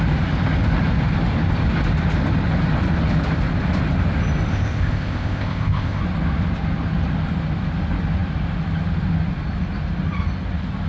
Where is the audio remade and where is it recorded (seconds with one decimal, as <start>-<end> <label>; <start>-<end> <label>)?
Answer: 0.0-4.5 recorded; 4.5-6.0 remade; 6.0-10.9 recorded